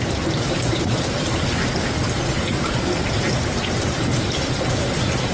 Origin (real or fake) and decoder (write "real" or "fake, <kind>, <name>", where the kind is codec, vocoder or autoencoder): real